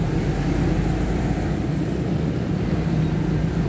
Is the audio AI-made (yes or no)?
no